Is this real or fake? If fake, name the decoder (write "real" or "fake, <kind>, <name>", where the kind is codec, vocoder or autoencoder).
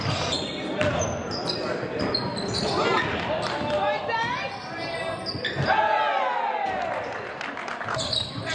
real